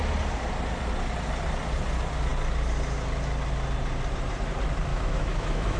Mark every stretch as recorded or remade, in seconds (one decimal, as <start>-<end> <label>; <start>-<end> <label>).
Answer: 0.0-4.9 recorded; 4.9-5.8 remade